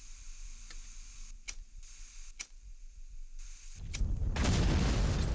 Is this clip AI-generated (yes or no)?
yes